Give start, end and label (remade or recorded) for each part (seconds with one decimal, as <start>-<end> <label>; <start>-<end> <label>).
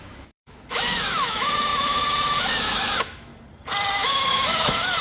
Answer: 0.0-3.3 remade; 3.3-3.9 recorded; 3.9-5.0 remade